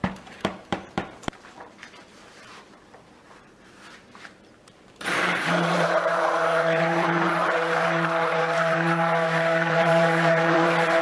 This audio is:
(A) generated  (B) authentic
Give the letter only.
A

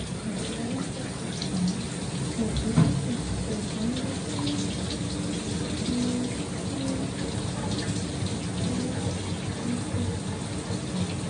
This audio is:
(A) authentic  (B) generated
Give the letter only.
A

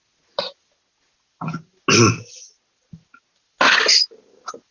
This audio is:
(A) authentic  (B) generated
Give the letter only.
A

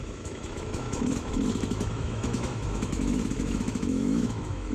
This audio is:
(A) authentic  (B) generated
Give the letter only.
B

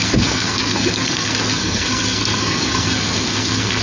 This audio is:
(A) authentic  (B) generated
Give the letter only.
B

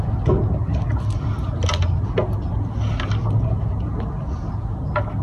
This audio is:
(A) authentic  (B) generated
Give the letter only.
A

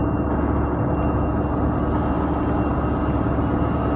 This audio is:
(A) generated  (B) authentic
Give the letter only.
B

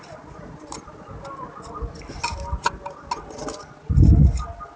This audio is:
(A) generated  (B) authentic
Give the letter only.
B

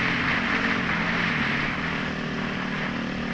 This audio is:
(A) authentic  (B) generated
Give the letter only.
A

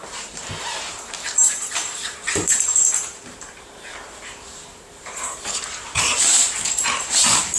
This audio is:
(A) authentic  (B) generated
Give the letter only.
B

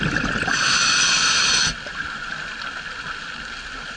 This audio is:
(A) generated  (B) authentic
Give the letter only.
B